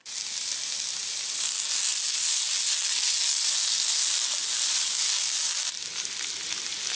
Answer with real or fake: real